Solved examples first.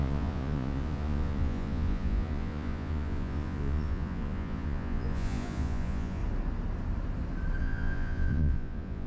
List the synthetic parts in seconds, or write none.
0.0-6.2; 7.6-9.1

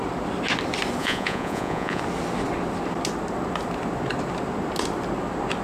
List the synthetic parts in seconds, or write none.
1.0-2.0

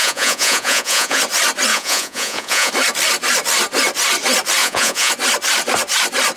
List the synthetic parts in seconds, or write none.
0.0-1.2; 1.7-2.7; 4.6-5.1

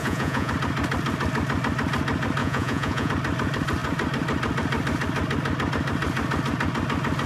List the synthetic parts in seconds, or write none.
0.0-0.5; 2.4-3.1

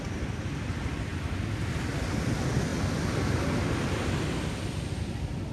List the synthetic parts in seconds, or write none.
none